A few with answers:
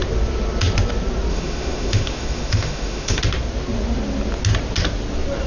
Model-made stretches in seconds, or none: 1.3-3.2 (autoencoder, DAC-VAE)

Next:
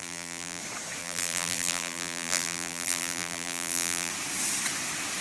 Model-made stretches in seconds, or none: 0.0-0.6 (vocoder, BigVGAN v2); 1.0-4.1

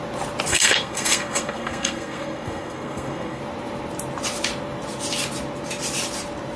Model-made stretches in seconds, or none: 0.5-3.4 (codec, SNAC)

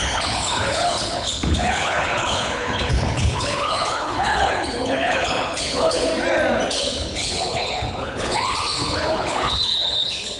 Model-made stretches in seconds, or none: 0.0-6.1 (codec, HILCodec); 6.7-10.4